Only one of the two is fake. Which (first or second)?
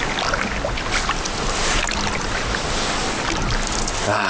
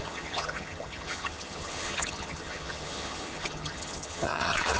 second